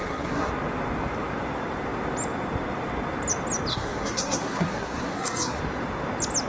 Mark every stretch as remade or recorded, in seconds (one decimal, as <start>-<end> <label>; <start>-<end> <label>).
0.0-0.5 remade; 0.5-3.7 recorded; 3.7-5.6 remade; 5.6-6.5 recorded